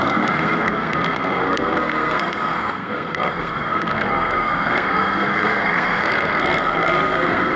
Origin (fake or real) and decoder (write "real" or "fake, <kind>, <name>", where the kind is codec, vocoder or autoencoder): fake, codec, SNAC